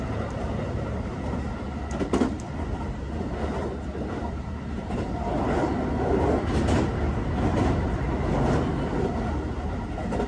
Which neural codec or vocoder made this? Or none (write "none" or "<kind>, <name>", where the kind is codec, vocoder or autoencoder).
none